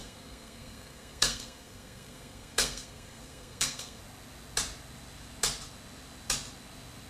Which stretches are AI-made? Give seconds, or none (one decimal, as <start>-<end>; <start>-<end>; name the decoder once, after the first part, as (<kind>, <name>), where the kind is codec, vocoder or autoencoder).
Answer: 0.0-4.0 (codec, SNAC)